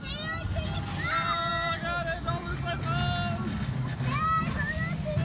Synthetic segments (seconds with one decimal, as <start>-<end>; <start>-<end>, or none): none

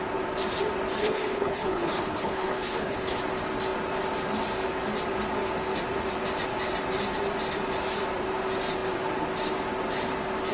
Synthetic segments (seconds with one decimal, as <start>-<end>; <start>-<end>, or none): 1.0-3.2

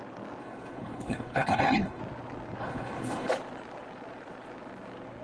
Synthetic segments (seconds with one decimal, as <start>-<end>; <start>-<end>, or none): 0.4-2.0; 2.6-3.3

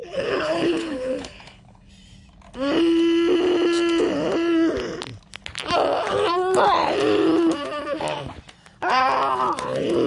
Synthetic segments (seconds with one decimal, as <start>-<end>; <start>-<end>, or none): 0.0-1.9

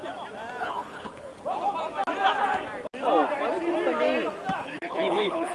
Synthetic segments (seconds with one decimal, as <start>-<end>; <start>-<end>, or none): 0.6-1.3; 4.6-5.5

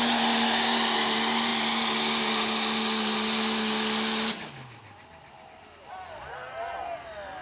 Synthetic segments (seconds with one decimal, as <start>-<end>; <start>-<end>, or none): none

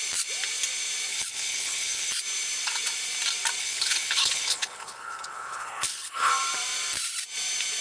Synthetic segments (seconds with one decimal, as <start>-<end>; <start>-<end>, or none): 1.1-2.1; 3.6-6.3